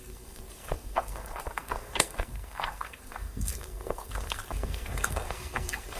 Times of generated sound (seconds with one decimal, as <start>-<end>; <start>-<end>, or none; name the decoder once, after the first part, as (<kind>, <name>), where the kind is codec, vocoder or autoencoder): 0.0-6.0 (codec, SNAC)